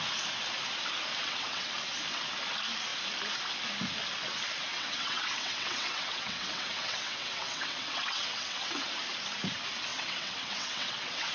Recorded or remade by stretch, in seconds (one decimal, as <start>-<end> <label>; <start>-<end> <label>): 0.0-1.1 recorded; 1.1-1.7 remade; 1.7-4.7 recorded; 4.7-8.9 remade; 8.9-9.9 recorded; 9.9-11.3 remade